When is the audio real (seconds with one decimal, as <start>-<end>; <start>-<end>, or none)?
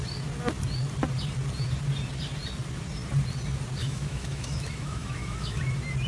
0.0-3.8; 5.6-6.1